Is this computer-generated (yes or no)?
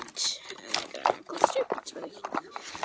no